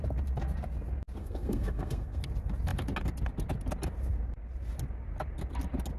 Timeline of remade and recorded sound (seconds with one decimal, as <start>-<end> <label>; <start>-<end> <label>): 0.0-1.2 recorded; 1.2-2.2 remade; 2.2-6.0 recorded